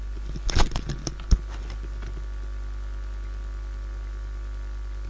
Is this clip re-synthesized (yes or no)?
no